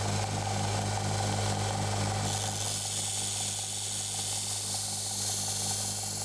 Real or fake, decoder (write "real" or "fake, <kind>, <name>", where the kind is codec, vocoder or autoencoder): real